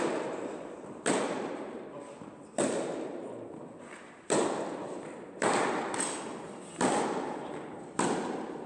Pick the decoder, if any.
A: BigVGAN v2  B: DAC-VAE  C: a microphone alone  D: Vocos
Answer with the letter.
A